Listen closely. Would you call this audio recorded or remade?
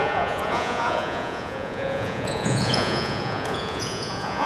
remade